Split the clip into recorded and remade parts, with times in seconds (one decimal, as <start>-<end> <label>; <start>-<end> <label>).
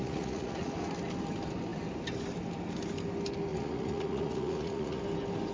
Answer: 0.0-0.7 remade; 0.7-3.5 recorded; 3.5-5.0 remade; 5.0-5.5 recorded